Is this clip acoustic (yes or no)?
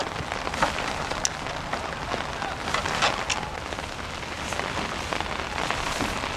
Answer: yes